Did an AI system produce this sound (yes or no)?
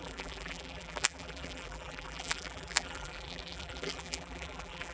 yes